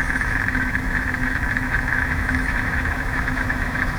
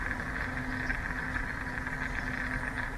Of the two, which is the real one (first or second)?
second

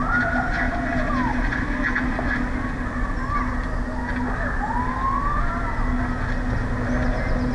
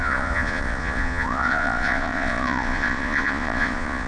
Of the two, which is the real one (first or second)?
first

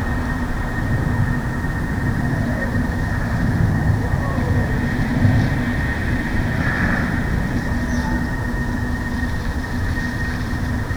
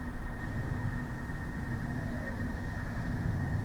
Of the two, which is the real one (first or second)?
second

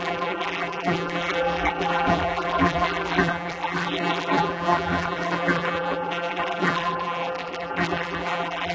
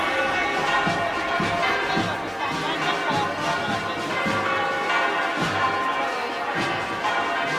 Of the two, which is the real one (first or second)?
second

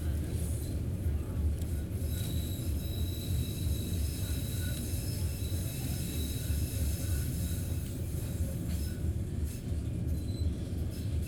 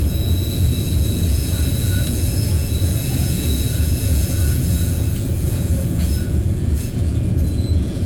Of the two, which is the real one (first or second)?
first